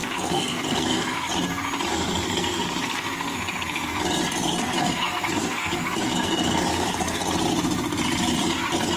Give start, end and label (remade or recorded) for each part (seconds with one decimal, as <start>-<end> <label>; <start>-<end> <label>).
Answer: 0.0-1.3 remade; 1.3-1.9 recorded; 1.9-4.0 remade; 4.0-4.6 recorded; 4.6-7.2 remade; 7.2-9.0 recorded